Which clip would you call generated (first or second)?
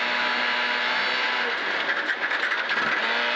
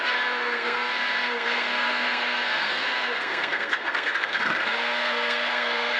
second